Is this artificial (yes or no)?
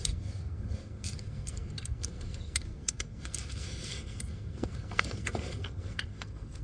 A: yes